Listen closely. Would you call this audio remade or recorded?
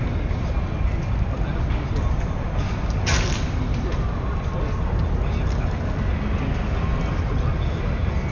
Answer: recorded